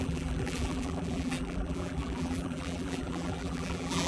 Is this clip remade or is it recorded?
remade